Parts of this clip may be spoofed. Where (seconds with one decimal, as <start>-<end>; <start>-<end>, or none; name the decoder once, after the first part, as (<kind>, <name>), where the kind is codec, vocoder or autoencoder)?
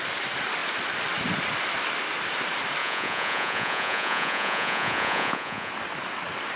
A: 2.8-5.7 (vocoder, Vocos)